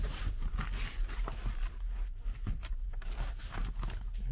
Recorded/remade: recorded